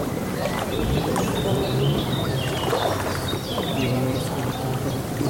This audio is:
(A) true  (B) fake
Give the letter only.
A